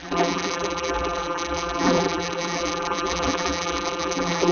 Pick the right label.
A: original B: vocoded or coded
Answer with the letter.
B